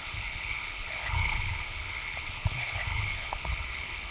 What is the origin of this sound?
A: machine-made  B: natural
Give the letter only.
A